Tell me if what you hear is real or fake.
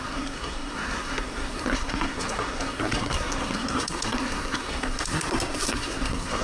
fake